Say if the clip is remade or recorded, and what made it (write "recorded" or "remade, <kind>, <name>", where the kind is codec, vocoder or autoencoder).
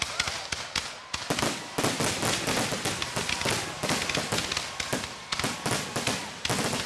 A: recorded